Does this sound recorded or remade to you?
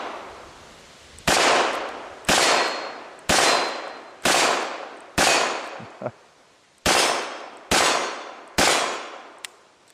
recorded